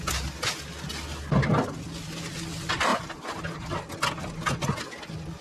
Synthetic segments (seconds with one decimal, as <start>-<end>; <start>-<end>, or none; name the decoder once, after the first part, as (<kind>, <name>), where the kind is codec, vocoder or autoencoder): none